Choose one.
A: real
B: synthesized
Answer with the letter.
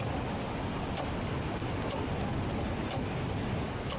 A